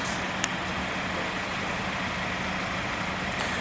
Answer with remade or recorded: recorded